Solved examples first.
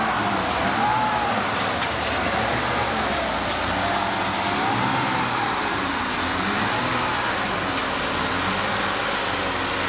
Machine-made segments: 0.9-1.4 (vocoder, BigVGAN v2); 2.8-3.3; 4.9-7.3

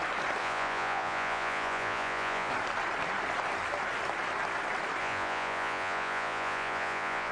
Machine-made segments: 0.4-2.5 (vocoder, Vocos); 5.0-7.3

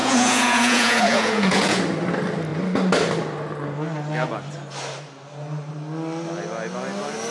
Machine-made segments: 0.0-1.8 (vocoder, Vocos)